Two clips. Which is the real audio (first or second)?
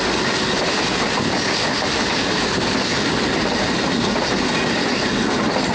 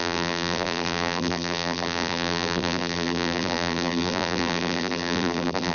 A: first